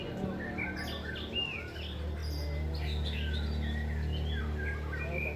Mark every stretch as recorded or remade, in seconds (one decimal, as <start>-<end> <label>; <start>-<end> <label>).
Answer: 0.0-5.4 recorded